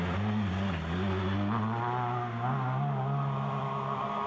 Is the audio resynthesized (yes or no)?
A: no